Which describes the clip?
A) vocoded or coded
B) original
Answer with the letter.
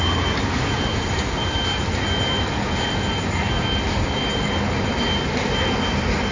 B